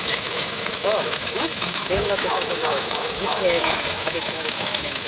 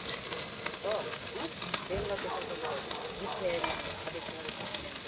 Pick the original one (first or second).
second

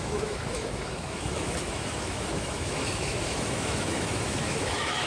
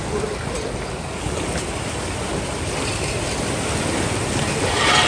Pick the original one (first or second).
second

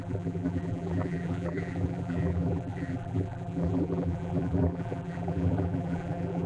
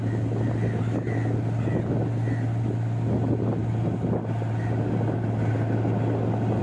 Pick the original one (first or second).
second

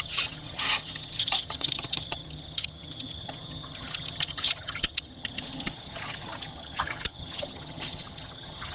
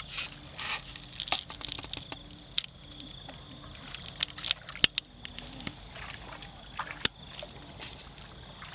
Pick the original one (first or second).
second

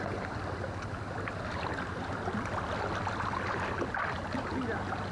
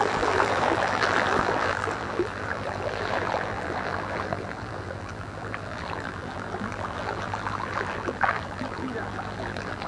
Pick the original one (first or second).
first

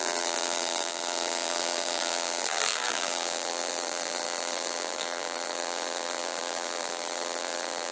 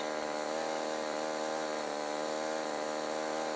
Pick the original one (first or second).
second